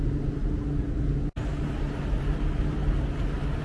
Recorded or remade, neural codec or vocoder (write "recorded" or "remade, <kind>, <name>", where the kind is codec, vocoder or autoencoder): recorded